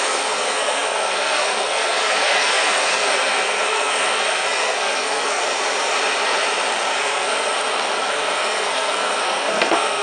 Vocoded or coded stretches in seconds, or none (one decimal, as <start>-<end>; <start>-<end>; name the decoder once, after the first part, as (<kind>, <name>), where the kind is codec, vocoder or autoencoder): 0.0-5.4 (codec, SNAC); 7.0-7.5; 8.0-10.0

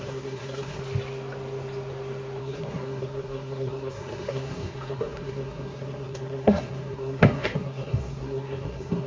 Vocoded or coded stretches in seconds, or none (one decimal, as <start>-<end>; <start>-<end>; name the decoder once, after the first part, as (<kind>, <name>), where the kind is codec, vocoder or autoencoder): 0.0-0.8 (codec, SNAC); 2.4-9.1

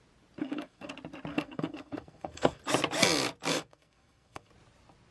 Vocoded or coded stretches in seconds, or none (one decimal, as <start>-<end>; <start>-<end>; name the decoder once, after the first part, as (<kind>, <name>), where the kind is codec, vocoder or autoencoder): 0.4-0.9 (codec, SNAC); 1.3-2.6; 3.5-4.5

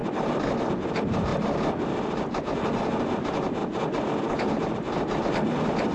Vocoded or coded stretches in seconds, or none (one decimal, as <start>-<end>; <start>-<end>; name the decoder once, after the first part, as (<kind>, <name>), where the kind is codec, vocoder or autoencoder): none